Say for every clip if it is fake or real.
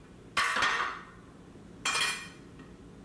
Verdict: real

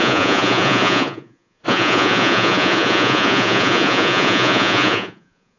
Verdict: fake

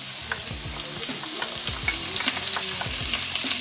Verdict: real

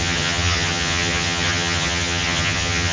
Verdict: fake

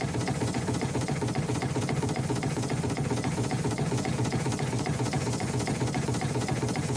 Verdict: fake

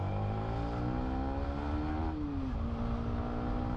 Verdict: real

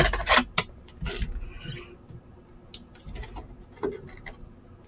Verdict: real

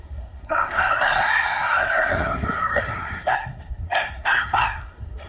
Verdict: fake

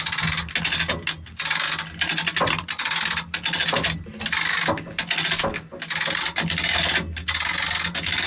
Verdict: real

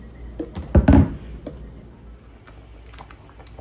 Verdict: real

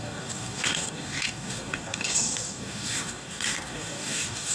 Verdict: fake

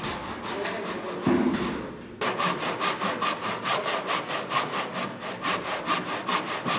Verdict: real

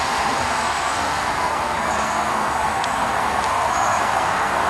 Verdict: fake